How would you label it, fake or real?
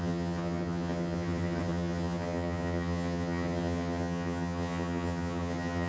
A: fake